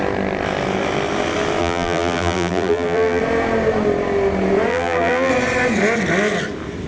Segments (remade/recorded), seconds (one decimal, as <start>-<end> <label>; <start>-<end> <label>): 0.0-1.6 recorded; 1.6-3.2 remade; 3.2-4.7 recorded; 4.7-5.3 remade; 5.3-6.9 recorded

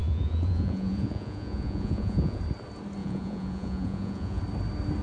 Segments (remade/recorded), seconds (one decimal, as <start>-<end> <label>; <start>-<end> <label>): 0.0-2.4 remade; 2.4-3.0 recorded; 3.0-4.4 remade; 4.4-5.0 recorded

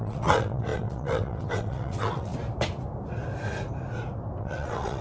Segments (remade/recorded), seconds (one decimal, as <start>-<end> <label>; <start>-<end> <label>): 0.0-2.3 remade; 2.3-4.4 recorded; 4.4-5.0 remade

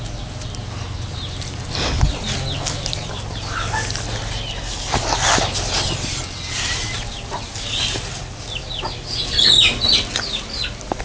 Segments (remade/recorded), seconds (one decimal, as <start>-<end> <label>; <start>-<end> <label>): 0.0-11.0 recorded

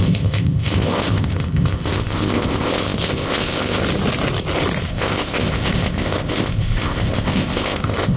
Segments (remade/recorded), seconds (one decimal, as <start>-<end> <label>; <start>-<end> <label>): 0.0-3.8 remade; 3.8-4.9 recorded; 4.9-8.2 remade

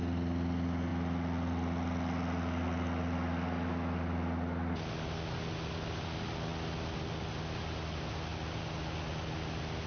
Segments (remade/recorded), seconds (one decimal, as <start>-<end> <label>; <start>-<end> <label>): 0.0-9.9 recorded

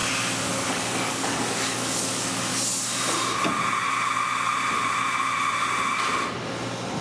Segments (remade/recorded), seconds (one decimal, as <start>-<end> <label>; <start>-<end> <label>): 0.0-0.7 recorded; 0.7-2.5 remade; 2.5-7.0 recorded